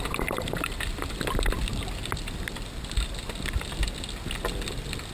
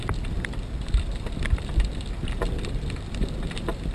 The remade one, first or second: second